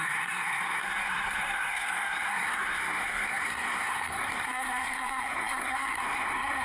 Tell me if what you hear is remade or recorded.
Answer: remade